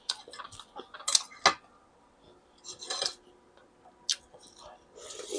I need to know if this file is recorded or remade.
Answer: recorded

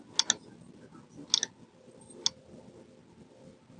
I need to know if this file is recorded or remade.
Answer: recorded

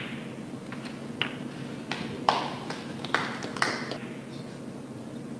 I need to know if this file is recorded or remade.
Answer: recorded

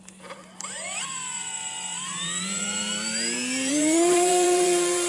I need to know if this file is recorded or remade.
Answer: remade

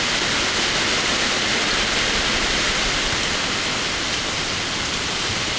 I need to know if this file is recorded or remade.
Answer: remade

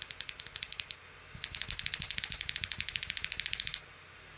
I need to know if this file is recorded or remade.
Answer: recorded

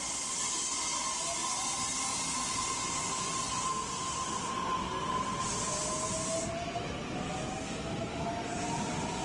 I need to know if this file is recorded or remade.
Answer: recorded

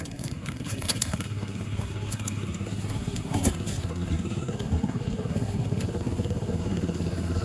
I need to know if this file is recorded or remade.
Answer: remade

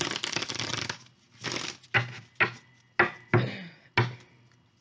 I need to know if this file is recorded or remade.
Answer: recorded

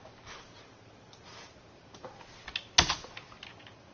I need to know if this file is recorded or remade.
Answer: recorded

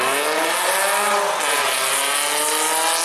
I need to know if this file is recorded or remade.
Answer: recorded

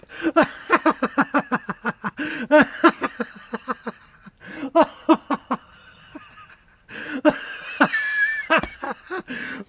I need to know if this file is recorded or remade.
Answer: recorded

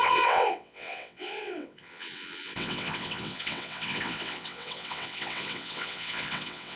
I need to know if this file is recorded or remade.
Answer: remade